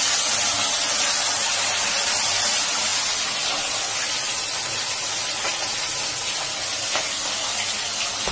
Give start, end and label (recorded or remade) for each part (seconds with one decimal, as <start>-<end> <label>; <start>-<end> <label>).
0.0-8.3 recorded